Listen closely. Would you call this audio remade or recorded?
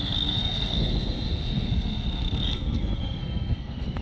remade